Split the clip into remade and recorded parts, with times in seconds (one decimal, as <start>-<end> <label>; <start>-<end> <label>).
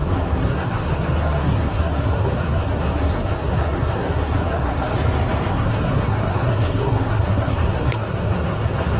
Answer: 0.0-4.9 remade; 4.9-5.5 recorded; 5.5-9.0 remade